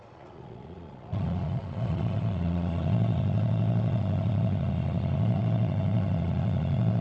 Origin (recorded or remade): remade